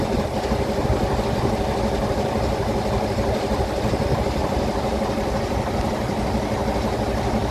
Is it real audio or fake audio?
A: real